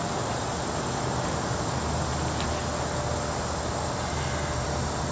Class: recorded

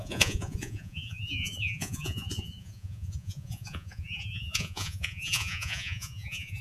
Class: remade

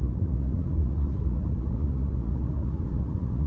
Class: remade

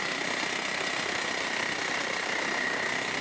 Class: recorded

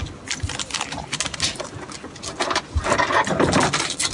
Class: recorded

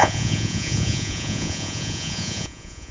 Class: remade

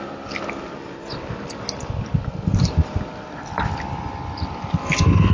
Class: recorded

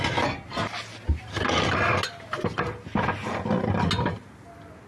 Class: recorded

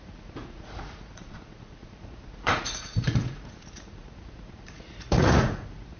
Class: remade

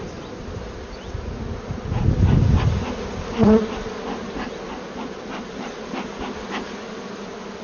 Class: recorded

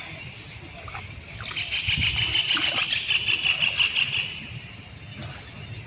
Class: recorded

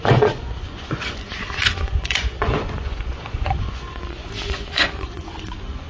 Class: remade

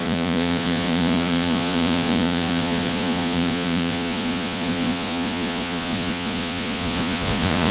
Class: remade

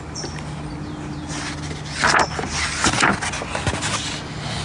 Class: recorded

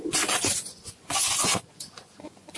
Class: remade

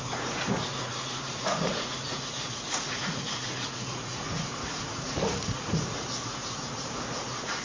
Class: remade